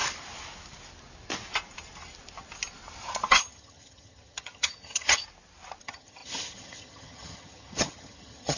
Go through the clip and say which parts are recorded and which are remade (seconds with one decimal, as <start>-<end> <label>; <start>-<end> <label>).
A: 0.0-3.3 recorded; 3.3-5.2 remade; 5.2-5.8 recorded; 5.8-8.6 remade

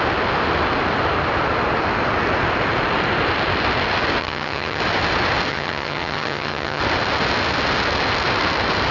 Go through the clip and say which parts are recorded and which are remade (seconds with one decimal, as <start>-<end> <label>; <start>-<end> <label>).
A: 0.0-4.2 recorded; 4.2-4.8 remade; 4.8-5.5 recorded; 5.5-6.8 remade; 6.8-8.9 recorded

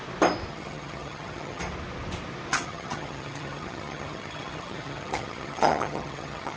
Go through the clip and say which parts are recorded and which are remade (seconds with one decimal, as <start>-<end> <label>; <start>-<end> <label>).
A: 0.0-0.5 recorded; 0.5-1.6 remade; 1.6-2.5 recorded; 2.5-6.6 remade

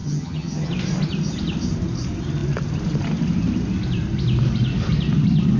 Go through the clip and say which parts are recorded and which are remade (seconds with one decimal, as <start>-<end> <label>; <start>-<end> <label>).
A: 0.0-0.7 remade; 0.7-5.6 recorded

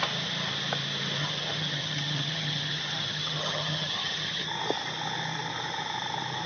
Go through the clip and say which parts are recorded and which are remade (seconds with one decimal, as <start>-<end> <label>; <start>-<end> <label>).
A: 0.0-1.2 recorded; 1.2-4.5 remade; 4.5-6.5 recorded

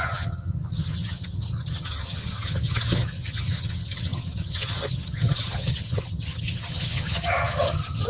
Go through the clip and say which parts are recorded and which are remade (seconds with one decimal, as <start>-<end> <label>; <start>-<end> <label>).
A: 0.0-8.1 remade

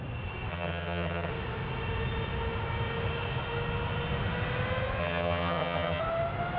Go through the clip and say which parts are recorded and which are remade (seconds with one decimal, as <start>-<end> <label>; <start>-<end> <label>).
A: 0.0-0.5 recorded; 0.5-1.3 remade; 1.3-5.0 recorded; 5.0-6.0 remade; 6.0-6.6 recorded